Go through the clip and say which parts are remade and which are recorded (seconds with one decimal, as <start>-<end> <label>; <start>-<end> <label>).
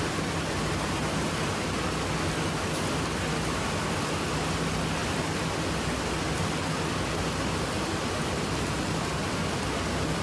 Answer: 0.0-10.2 recorded